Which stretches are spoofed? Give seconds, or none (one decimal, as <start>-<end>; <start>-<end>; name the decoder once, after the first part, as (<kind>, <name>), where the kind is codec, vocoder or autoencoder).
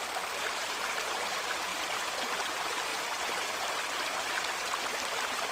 1.7-2.3 (vocoder, BigVGAN v2); 2.9-3.8